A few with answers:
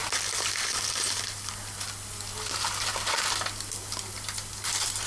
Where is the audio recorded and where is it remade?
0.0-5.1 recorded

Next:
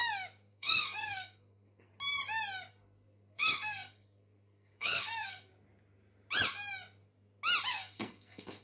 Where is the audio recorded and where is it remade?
0.0-0.5 recorded; 0.5-1.9 remade; 1.9-2.7 recorded; 2.7-5.5 remade; 5.5-7.7 recorded; 7.7-8.6 remade

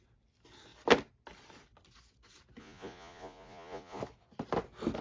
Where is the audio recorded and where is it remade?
0.0-2.6 recorded; 2.6-4.0 remade; 4.0-5.0 recorded

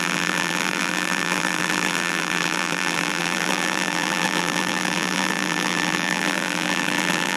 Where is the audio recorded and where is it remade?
0.0-7.4 remade

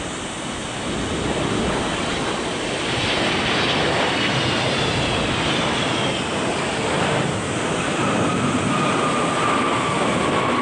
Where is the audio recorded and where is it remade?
0.0-10.6 recorded

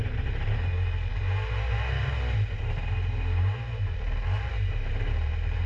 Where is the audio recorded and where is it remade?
0.0-5.7 remade

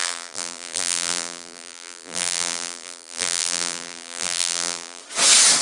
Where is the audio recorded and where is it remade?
0.0-5.0 remade; 5.0-5.6 recorded